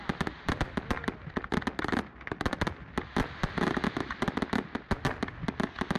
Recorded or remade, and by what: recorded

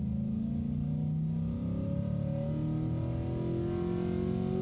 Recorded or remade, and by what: recorded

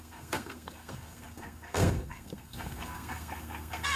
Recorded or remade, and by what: remade, codec, SNAC